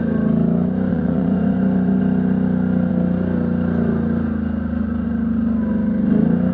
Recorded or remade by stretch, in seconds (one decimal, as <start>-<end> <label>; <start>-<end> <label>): 0.0-0.9 recorded; 0.9-2.0 remade; 2.0-6.5 recorded